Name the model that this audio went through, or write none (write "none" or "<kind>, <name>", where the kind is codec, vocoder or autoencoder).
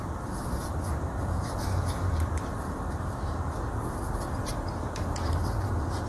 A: vocoder, BigVGAN v2